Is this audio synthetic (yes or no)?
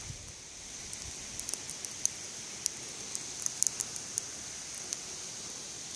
yes